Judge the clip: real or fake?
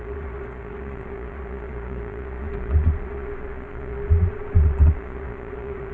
fake